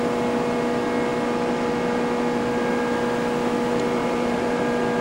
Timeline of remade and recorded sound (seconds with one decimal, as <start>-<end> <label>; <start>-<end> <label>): 0.0-4.0 recorded; 4.0-4.6 remade; 4.6-5.0 recorded

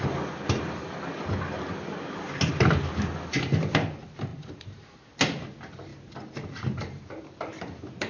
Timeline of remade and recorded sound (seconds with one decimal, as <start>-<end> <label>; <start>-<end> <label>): 0.0-4.3 recorded; 4.3-5.0 remade; 5.0-5.9 recorded; 5.9-7.1 remade; 7.1-8.1 recorded